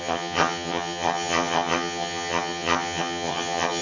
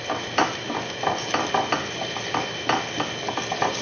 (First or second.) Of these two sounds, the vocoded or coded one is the first